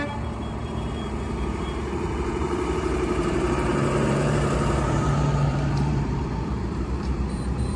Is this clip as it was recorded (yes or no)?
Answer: no